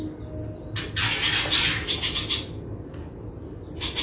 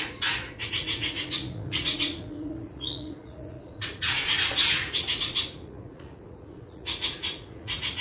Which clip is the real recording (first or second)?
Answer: first